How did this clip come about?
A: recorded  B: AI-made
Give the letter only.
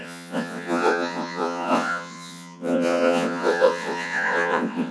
B